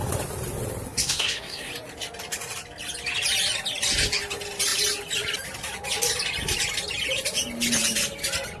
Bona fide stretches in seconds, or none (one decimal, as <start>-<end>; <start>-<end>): 0.0-1.0; 1.7-8.6